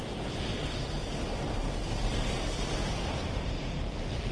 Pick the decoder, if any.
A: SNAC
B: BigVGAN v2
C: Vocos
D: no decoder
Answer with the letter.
D